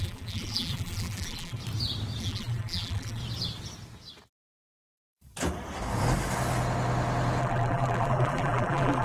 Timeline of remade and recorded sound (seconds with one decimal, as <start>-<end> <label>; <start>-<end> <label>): 0.0-1.6 remade; 1.6-2.2 recorded; 2.2-3.2 remade; 3.2-7.4 recorded; 7.4-9.0 remade